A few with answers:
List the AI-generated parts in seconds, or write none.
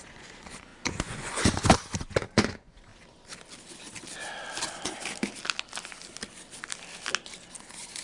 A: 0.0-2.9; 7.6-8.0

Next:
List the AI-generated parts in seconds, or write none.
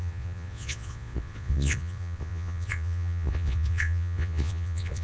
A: 0.0-5.0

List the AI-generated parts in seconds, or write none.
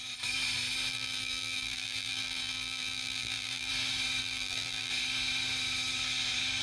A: 0.9-3.7; 4.2-4.9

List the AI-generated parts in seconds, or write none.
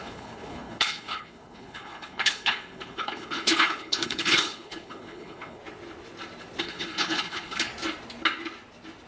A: 0.0-5.6; 6.6-7.7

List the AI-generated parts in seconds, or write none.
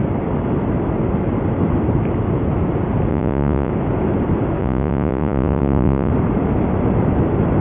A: 3.1-3.7; 4.6-6.1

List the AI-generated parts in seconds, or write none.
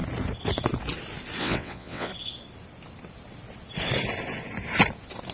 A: 1.4-2.1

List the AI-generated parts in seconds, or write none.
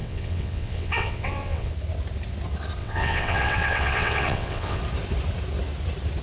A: 0.0-1.7; 2.8-4.8